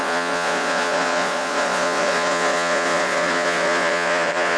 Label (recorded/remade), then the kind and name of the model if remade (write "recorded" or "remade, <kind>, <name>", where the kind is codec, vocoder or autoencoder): remade, vocoder, Vocos